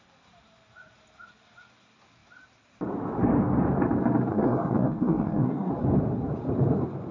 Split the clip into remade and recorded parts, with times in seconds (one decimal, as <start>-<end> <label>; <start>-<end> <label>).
0.0-4.3 recorded; 4.3-5.7 remade; 5.7-7.1 recorded